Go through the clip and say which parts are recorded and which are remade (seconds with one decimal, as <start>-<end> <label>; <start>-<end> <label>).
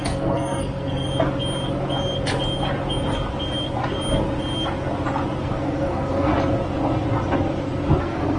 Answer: 0.0-1.1 remade; 1.1-5.4 recorded; 5.4-6.3 remade; 6.3-8.0 recorded; 8.0-8.4 remade